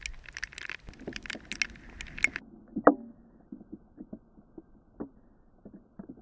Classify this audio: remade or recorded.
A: recorded